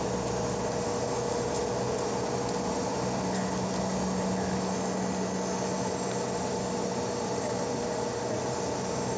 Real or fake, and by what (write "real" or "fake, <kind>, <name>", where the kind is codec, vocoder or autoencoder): real